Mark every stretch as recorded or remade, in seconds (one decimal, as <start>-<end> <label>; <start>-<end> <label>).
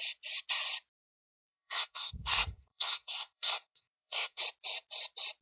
0.0-1.2 recorded; 1.2-4.4 remade; 4.4-5.4 recorded